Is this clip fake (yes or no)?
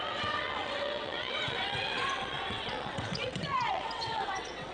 yes